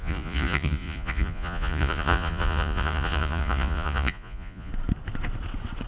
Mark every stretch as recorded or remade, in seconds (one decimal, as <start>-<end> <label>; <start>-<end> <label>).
0.0-4.7 remade; 4.7-5.9 recorded